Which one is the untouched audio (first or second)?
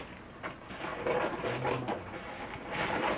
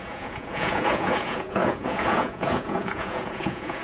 first